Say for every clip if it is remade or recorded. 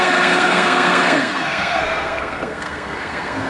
remade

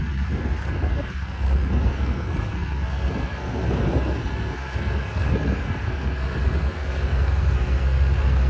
remade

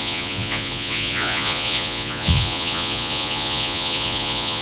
remade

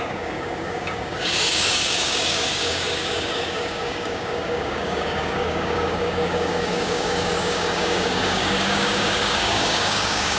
remade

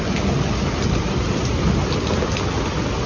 recorded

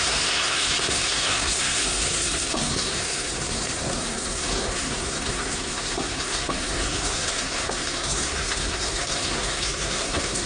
remade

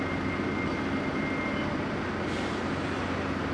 recorded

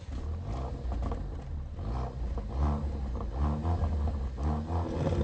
recorded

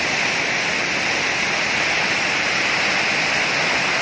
recorded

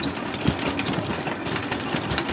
recorded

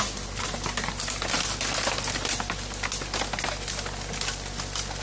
recorded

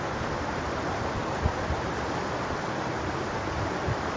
recorded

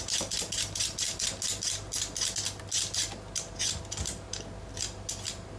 recorded